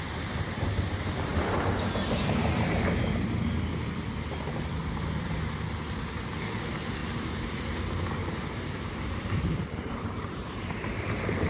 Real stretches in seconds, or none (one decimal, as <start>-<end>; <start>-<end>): 0.0-1.3; 2.7-4.8; 5.3-7.0; 7.8-8.2; 10.9-11.5